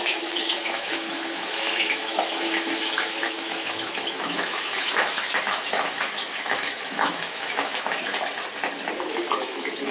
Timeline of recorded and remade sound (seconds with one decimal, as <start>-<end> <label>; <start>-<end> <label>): 0.0-8.1 remade; 8.1-9.4 recorded; 9.4-9.9 remade